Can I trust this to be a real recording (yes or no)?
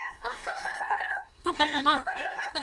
no